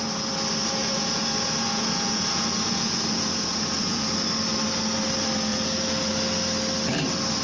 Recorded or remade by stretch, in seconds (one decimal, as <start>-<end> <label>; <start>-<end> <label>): 0.0-0.8 recorded; 0.8-4.1 remade; 4.1-5.5 recorded; 5.5-6.1 remade; 6.1-7.4 recorded